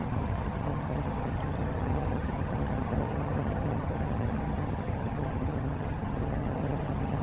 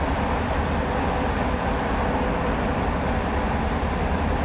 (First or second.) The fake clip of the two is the first